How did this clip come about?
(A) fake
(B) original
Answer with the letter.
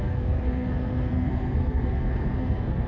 A